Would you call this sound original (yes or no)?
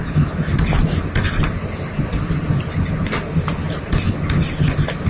yes